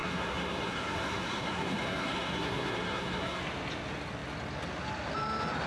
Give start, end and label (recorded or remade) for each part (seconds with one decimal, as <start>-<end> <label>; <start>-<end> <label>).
0.0-3.4 remade; 3.4-5.7 recorded